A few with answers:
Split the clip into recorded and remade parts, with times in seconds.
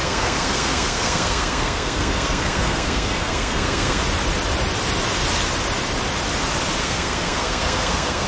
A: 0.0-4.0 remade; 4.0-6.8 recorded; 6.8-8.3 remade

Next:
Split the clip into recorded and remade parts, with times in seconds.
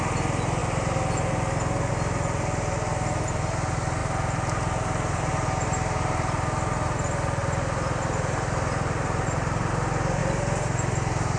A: 0.0-4.0 recorded; 4.0-5.3 remade; 5.3-7.4 recorded; 7.4-9.7 remade; 9.7-10.2 recorded; 10.2-11.4 remade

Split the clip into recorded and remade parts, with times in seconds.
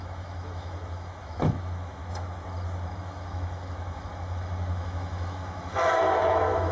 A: 0.0-2.0 remade; 2.0-3.0 recorded; 3.0-6.7 remade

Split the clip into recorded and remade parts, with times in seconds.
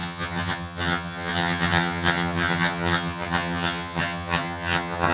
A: 0.0-5.1 remade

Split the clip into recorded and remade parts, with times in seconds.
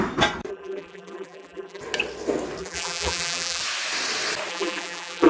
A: 0.0-0.5 recorded; 0.5-1.8 remade; 1.8-2.6 recorded; 2.6-3.6 remade; 3.6-4.5 recorded; 4.5-5.3 remade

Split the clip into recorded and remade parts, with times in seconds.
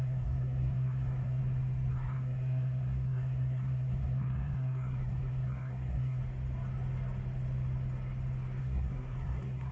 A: 0.0-1.4 remade; 1.4-1.9 recorded; 1.9-6.2 remade; 6.2-8.6 recorded; 8.6-9.7 remade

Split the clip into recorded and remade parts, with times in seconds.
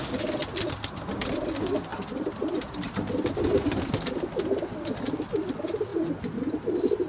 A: 0.0-7.1 recorded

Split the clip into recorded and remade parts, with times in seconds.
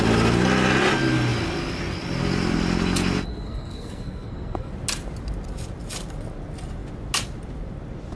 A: 0.0-3.3 recorded; 3.3-4.7 remade; 4.7-8.2 recorded